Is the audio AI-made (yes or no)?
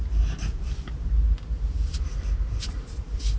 no